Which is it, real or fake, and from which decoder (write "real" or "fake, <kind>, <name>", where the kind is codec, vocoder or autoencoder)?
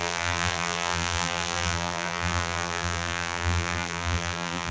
fake, vocoder, BigVGAN v2